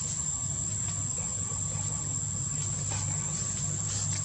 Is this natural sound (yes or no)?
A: yes